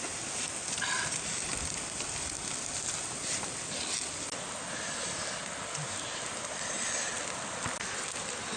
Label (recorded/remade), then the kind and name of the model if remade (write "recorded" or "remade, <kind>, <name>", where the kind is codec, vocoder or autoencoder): recorded